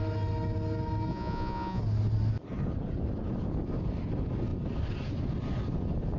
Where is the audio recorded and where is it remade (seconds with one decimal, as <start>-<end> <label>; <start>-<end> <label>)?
0.0-1.1 recorded; 1.1-1.8 remade; 1.8-6.2 recorded